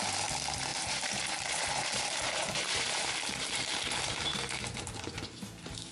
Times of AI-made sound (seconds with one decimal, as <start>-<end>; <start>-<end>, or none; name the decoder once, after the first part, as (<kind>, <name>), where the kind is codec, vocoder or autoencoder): 0.7-4.2 (vocoder, BigVGAN v2)